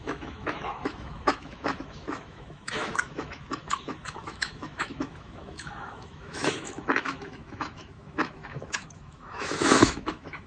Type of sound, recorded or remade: remade